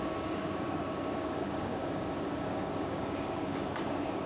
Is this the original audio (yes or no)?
no